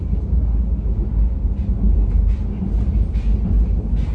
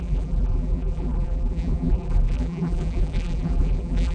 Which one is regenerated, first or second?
second